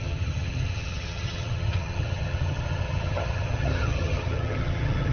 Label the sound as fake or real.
fake